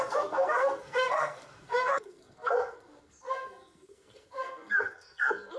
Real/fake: fake